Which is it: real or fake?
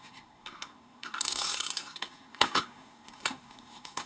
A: fake